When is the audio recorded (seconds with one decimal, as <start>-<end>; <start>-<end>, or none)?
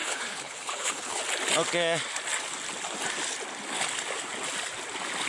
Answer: 1.2-5.3